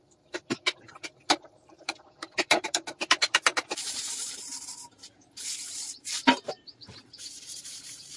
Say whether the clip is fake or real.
fake